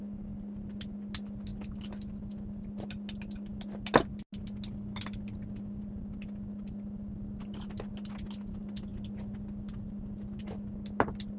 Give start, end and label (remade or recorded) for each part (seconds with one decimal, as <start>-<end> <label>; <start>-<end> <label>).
0.0-11.4 recorded